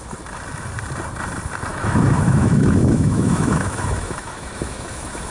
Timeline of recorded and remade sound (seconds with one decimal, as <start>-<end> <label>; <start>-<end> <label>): 0.0-1.7 recorded; 1.7-5.3 remade